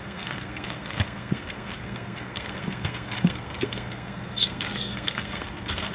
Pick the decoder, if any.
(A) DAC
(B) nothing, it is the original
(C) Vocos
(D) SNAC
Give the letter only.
D